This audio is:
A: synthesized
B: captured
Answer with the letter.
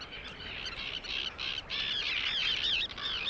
B